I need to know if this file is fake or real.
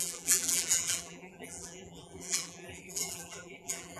fake